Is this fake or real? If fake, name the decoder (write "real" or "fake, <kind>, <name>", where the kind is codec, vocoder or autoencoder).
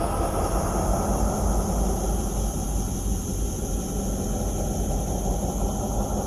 real